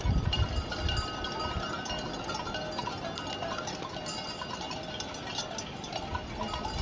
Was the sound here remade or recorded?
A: recorded